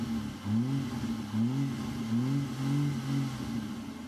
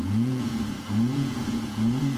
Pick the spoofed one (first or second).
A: second